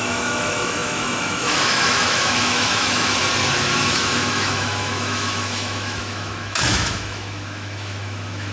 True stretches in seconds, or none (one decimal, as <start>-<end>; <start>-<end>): 3.2-3.8